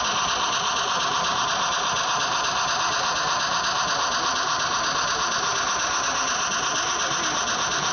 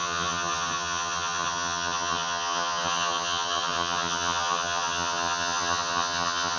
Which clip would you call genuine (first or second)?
first